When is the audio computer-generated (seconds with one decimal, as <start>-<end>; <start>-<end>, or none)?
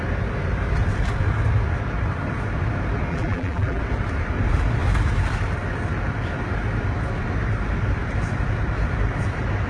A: 3.1-3.8